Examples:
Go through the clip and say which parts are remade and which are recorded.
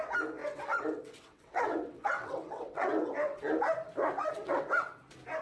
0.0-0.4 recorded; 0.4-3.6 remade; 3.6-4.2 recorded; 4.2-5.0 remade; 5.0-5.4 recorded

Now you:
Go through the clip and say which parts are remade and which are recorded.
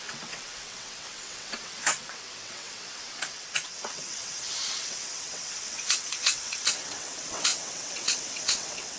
0.0-9.0 remade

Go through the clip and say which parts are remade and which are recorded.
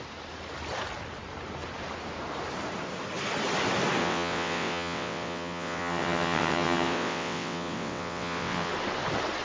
0.0-4.0 recorded; 4.0-8.7 remade; 8.7-9.4 recorded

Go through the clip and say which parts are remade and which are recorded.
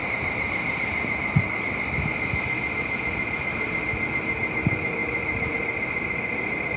0.0-6.8 recorded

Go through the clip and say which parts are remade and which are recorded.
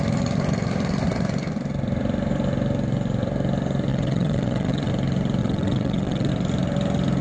0.0-3.9 recorded; 3.9-4.9 remade; 4.9-5.4 recorded; 5.4-6.3 remade; 6.3-7.2 recorded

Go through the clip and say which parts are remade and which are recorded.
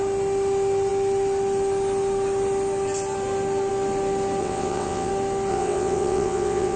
0.0-4.4 recorded; 4.4-5.1 remade; 5.1-5.5 recorded; 5.5-6.8 remade